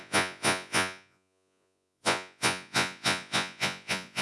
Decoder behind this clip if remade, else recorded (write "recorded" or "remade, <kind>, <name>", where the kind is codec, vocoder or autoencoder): remade, vocoder, Vocos